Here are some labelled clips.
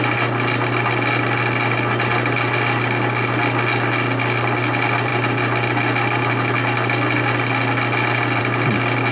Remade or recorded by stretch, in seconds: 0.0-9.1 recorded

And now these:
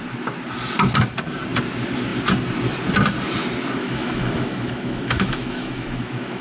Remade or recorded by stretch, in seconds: 0.0-3.8 recorded; 3.8-6.4 remade

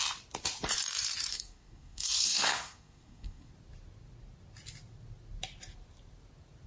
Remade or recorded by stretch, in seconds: 0.0-1.3 recorded; 1.3-3.5 remade; 3.5-6.7 recorded

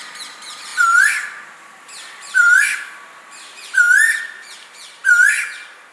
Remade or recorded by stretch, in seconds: 0.0-5.0 remade; 5.0-5.9 recorded

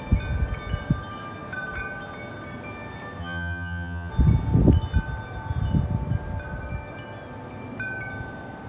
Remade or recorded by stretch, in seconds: 0.0-3.2 recorded; 3.2-4.1 remade; 4.1-8.7 recorded

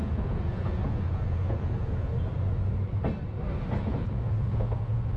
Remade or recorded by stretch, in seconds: 0.0-2.1 remade; 2.1-3.8 recorded; 3.8-5.2 remade

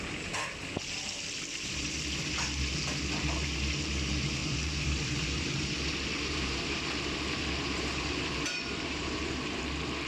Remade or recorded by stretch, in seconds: 0.0-4.4 recorded; 4.4-9.6 remade; 9.6-10.1 recorded